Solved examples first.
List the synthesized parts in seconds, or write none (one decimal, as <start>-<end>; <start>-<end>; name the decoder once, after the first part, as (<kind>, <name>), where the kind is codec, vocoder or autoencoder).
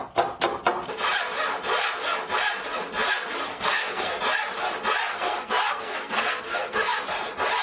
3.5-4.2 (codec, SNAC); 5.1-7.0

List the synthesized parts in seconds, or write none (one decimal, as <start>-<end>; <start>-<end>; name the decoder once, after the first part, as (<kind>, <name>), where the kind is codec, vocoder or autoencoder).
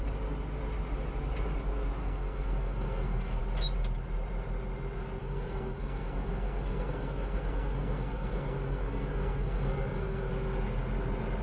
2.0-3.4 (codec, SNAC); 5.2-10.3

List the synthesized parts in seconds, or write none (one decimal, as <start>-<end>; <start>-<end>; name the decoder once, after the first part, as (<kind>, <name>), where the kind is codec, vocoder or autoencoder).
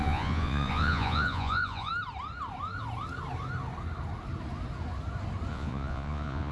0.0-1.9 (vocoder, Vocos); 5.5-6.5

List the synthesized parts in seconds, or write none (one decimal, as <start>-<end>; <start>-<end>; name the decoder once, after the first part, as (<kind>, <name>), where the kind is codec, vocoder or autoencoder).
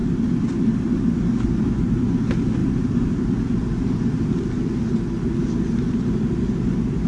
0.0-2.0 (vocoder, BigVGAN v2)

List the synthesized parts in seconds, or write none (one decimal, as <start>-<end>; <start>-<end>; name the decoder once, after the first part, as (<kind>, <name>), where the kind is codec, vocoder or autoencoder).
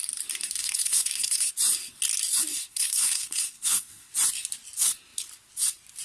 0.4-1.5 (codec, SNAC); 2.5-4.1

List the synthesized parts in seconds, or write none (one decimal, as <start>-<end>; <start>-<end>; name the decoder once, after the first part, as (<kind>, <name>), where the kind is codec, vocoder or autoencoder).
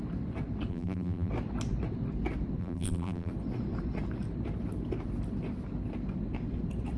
0.7-1.3 (vocoder, BigVGAN v2); 2.6-3.3